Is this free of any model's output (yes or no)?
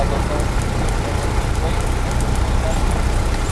yes